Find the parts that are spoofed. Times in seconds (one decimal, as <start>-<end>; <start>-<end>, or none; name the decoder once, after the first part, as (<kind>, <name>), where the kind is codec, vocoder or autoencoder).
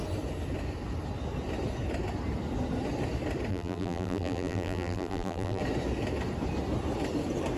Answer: 3.5-5.6 (vocoder, BigVGAN v2)